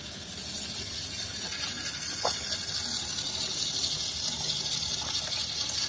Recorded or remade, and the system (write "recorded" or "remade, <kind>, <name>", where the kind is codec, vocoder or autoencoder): recorded